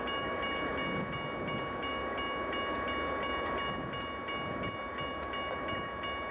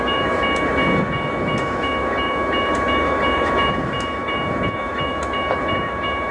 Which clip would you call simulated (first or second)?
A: second